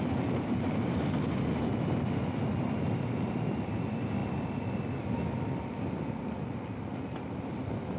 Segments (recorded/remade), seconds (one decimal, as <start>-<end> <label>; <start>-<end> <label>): 0.0-8.0 recorded